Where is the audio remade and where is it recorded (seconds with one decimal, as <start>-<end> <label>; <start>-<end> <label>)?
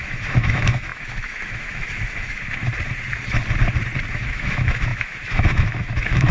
0.0-2.6 remade; 2.6-4.1 recorded; 4.1-6.3 remade